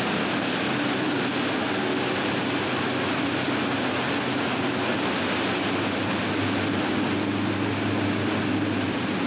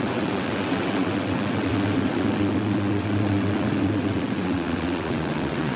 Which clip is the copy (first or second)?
second